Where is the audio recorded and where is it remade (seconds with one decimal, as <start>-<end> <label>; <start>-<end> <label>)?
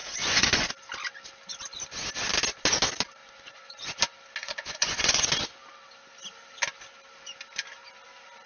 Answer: 0.0-0.7 remade; 0.7-3.2 recorded; 3.2-4.0 remade; 4.0-4.4 recorded; 4.4-5.3 remade; 5.3-8.5 recorded